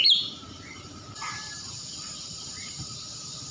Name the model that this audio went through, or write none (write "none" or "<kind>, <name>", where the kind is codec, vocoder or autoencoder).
vocoder, BigVGAN v2